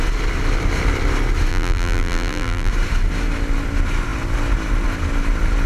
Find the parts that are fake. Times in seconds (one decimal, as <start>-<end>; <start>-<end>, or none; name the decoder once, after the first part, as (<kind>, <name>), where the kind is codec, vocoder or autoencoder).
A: 1.5-2.7 (vocoder, BigVGAN v2)